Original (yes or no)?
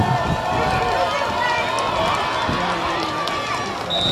yes